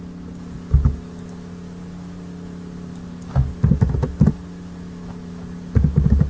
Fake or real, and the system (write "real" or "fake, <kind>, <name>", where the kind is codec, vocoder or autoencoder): real